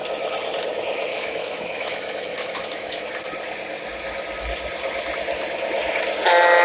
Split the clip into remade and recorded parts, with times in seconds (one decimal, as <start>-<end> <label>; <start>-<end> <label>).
0.0-1.1 recorded; 1.1-3.0 remade; 3.0-6.6 recorded